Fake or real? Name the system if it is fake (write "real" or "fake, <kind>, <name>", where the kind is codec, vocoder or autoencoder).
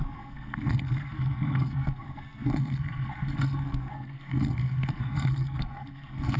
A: fake, codec, SNAC